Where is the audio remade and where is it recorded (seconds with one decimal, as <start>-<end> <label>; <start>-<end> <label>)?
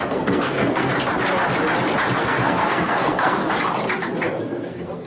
0.0-0.9 remade; 0.9-2.2 recorded; 2.2-3.4 remade; 3.4-4.4 recorded; 4.4-5.1 remade